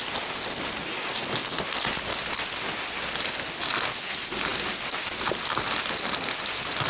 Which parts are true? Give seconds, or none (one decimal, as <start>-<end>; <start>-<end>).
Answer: 0.0-6.9